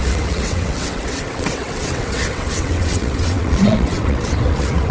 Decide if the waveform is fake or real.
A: fake